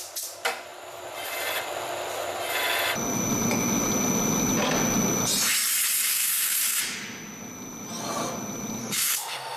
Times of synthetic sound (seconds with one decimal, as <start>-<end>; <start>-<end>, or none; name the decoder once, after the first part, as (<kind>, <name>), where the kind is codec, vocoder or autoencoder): 6.1-6.8 (codec, SNAC); 8.8-9.6